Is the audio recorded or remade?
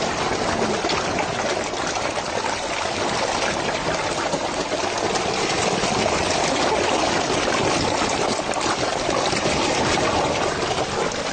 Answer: recorded